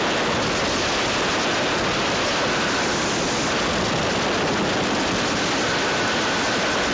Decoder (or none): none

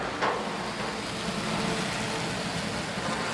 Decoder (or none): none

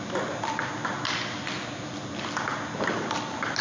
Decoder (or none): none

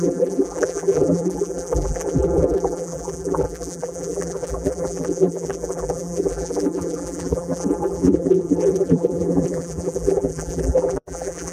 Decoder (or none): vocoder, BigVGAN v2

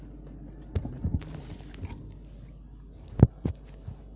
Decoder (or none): none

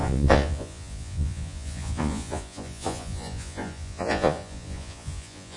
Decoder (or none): vocoder, Vocos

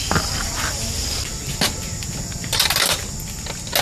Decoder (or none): none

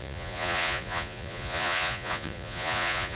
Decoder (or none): vocoder, Vocos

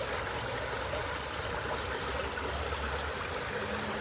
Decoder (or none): none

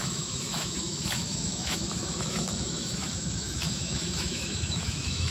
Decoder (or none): autoencoder, DAC-VAE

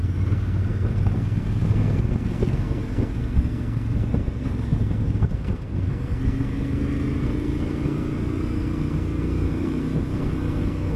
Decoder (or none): codec, SNAC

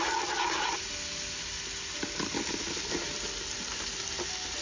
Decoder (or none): none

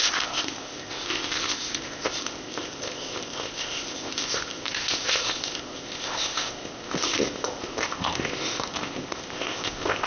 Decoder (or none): codec, ZipCodec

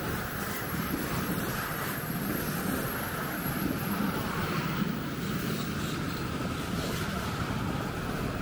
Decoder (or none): vocoder, BigVGAN v2